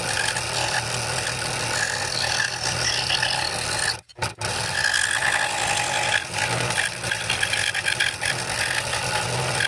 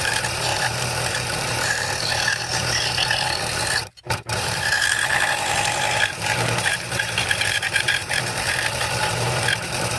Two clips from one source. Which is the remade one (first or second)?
second